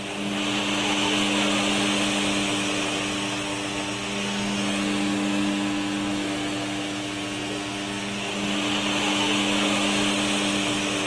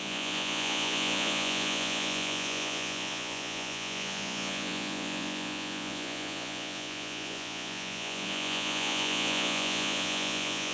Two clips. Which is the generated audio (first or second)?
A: second